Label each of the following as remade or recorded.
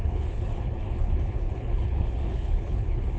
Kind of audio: remade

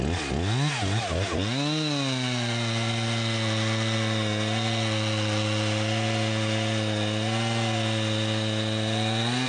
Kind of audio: recorded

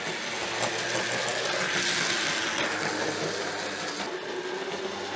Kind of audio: recorded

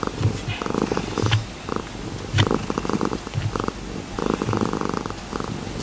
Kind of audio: recorded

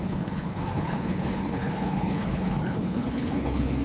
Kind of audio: remade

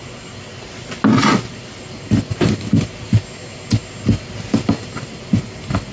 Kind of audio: recorded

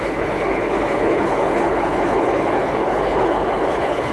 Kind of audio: remade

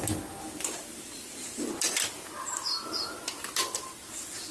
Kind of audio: recorded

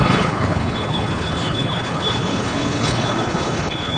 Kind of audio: remade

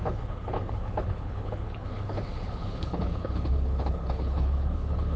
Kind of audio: remade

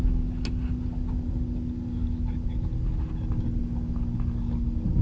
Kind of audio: recorded